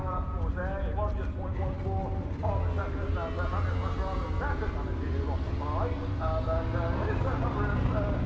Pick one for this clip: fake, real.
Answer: real